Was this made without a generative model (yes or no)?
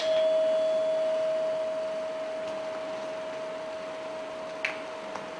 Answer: yes